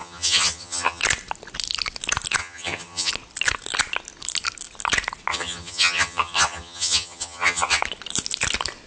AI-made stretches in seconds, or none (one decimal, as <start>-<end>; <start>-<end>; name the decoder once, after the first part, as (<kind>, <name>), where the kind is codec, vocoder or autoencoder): 0.0-1.0 (vocoder, HiFi-GAN); 2.4-3.1; 5.3-7.8